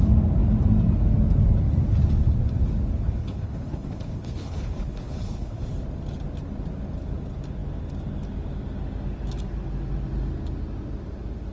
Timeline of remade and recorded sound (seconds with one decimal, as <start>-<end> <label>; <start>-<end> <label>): 0.0-3.2 recorded; 3.2-5.6 remade; 5.6-11.5 recorded